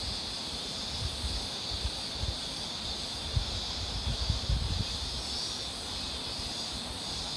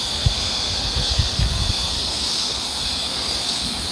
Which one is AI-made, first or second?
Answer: second